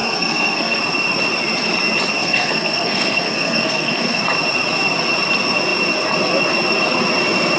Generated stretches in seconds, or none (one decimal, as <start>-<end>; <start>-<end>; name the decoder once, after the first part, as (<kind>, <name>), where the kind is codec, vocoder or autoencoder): 0.0-0.8 (codec, SNAC); 2.2-4.2